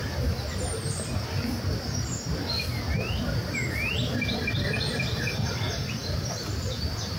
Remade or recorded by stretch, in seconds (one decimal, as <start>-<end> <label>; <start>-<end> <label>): 0.0-4.3 recorded; 4.3-6.0 remade; 6.0-6.6 recorded; 6.6-7.2 remade